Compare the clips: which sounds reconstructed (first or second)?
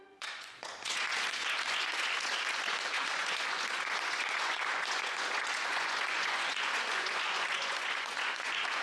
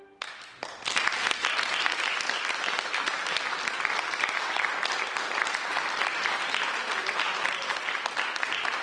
first